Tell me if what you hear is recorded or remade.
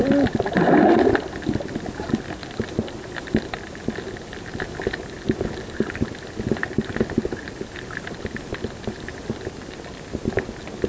recorded